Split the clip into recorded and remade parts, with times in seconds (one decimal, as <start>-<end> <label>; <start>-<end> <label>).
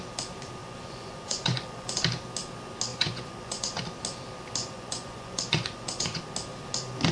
0.0-0.6 recorded; 0.6-2.0 remade; 2.0-2.9 recorded; 2.9-3.8 remade; 3.8-4.6 recorded; 4.6-6.2 remade; 6.2-7.1 recorded